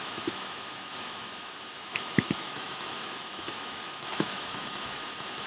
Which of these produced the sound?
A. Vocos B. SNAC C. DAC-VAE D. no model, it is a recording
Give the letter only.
C